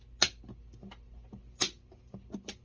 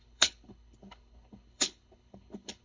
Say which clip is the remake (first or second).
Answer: second